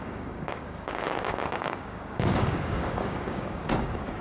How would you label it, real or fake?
fake